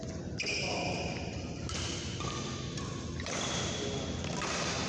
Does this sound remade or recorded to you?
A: recorded